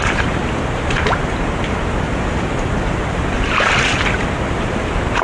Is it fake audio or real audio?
fake